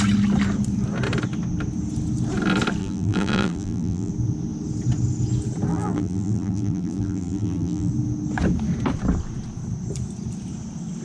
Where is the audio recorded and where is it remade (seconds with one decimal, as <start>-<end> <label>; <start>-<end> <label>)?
0.0-2.8 recorded; 2.8-4.1 remade; 4.1-5.7 recorded; 5.7-7.9 remade; 7.9-11.0 recorded